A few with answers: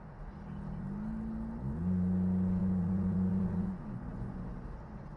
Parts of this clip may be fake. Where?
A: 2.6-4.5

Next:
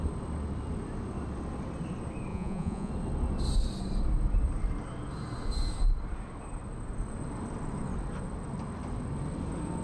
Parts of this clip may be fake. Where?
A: 2.3-2.9

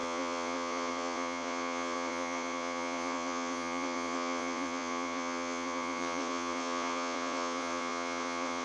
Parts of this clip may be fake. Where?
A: 0.0-8.6

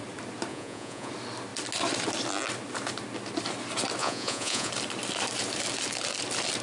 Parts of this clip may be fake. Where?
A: 0.5-1.1; 4.0-4.7

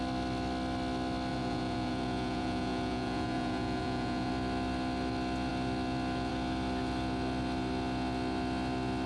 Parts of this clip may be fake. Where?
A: 1.3-4.3

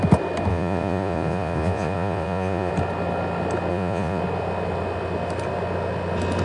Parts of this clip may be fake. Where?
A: 0.5-2.7; 3.7-4.2

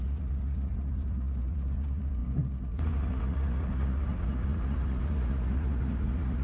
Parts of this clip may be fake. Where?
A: 0.0-6.4